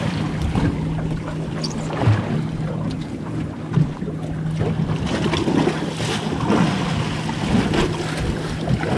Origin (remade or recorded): recorded